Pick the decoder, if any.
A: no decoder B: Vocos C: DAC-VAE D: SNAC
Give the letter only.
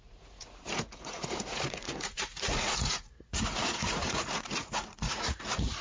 B